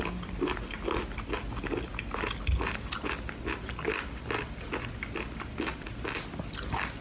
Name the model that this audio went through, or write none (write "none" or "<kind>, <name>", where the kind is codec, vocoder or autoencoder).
none